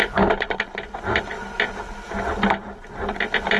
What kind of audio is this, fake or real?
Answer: real